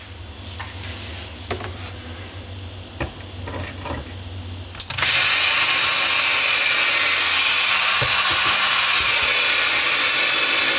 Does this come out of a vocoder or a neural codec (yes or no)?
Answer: no